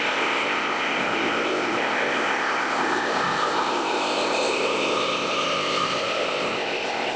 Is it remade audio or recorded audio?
remade